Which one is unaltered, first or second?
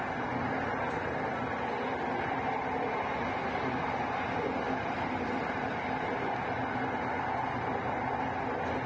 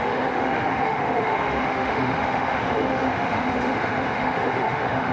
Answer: first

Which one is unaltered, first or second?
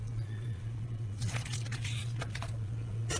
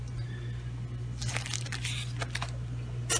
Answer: second